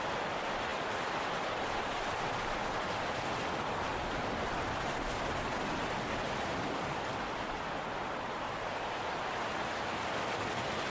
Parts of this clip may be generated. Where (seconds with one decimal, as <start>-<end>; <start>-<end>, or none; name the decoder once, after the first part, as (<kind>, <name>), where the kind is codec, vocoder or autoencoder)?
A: none